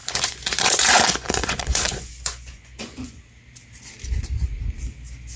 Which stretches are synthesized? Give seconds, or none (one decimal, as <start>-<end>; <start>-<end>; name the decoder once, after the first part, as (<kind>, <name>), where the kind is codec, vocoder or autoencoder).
0.0-3.2 (vocoder, Vocos)